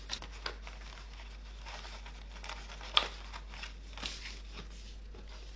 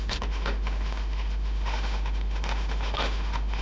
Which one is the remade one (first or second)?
second